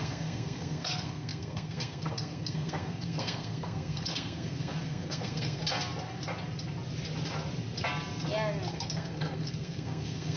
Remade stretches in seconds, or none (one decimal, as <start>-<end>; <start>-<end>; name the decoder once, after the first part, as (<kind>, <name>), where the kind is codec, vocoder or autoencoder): 0.0-5.6 (codec, SNAC); 8.7-10.4